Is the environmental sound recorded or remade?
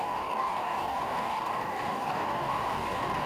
remade